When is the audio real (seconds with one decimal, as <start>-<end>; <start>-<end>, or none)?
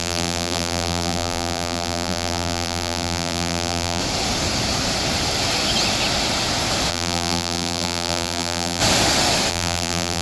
4.0-6.9; 8.8-9.5